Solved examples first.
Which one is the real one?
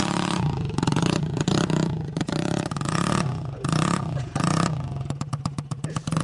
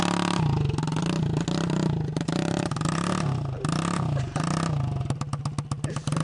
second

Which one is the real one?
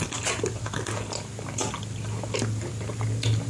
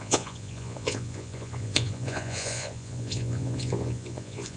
first